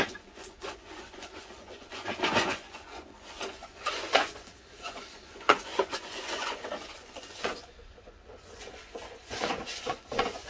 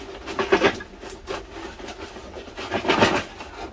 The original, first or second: second